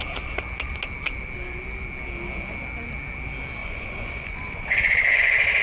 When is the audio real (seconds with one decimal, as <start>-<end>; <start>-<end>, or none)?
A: 0.0-3.6